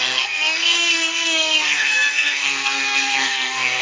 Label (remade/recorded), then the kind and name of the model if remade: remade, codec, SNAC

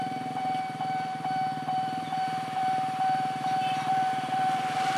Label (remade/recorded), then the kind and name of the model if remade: remade, vocoder, BigVGAN v2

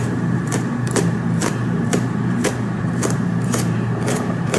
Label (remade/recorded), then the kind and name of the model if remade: remade, vocoder, BigVGAN v2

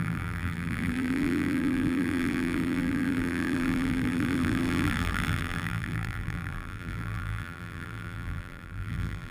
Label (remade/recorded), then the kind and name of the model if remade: remade, vocoder, BigVGAN v2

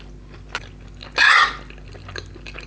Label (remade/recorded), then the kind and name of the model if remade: recorded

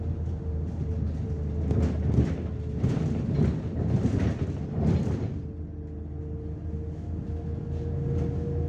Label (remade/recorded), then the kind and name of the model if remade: recorded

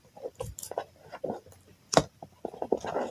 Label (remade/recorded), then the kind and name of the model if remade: remade, vocoder, BigVGAN v2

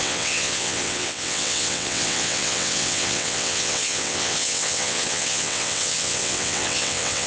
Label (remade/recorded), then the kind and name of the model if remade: remade, vocoder, WaveNeXt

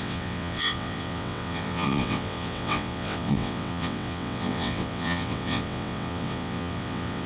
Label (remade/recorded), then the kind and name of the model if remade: remade, vocoder, WaveNeXt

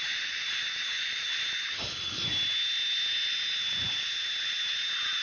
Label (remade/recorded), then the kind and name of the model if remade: recorded